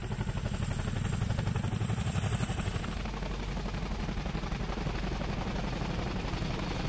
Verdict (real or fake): real